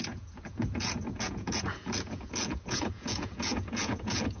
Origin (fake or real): fake